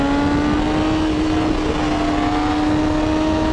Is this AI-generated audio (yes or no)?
no